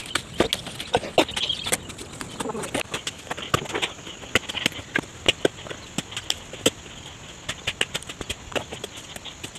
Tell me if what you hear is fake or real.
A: real